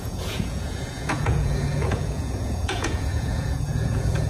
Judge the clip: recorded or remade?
remade